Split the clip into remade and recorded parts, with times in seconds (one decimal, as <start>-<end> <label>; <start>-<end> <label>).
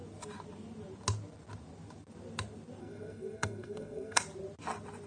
0.0-2.8 recorded; 2.8-4.2 remade; 4.2-5.1 recorded